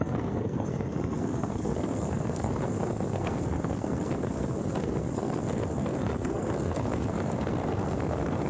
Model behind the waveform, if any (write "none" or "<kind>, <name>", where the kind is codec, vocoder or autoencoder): codec, SNAC